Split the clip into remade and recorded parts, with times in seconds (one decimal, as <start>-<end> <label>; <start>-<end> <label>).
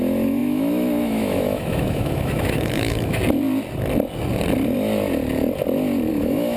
0.0-3.2 remade; 3.2-6.1 recorded; 6.1-6.6 remade